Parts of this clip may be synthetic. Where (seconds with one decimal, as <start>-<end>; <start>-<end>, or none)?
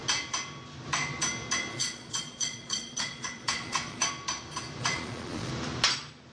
1.7-4.1; 4.8-5.5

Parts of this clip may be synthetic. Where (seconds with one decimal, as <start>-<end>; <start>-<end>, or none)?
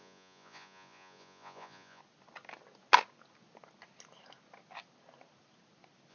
0.0-2.0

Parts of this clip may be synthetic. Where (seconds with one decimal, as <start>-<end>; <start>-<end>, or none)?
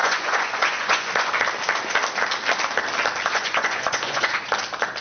0.0-1.3; 3.3-4.5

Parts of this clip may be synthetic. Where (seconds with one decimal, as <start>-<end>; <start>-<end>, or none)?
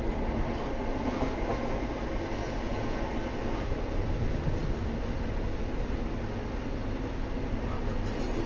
2.4-3.0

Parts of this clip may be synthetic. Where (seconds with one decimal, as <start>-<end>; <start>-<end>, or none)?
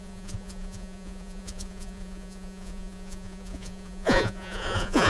0.0-5.1